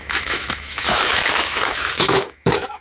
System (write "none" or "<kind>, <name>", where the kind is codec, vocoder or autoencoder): autoencoder, DAC-VAE